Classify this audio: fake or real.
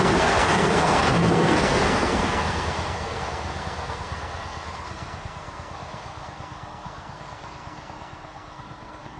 fake